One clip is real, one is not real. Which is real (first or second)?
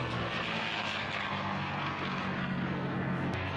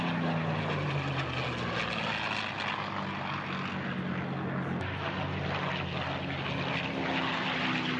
second